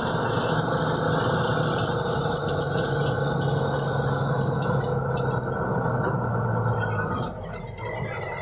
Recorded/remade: recorded